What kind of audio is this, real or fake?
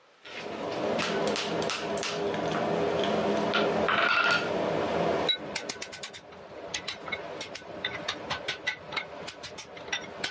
fake